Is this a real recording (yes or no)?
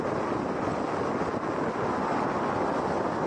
yes